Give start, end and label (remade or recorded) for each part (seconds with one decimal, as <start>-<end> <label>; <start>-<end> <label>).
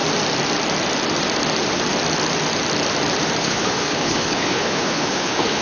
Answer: 0.0-3.4 recorded; 3.4-5.6 remade